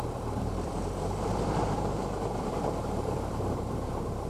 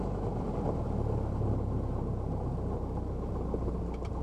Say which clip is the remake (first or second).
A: first